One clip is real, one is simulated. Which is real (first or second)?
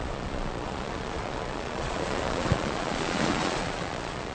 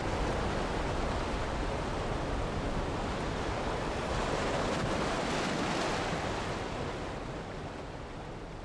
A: second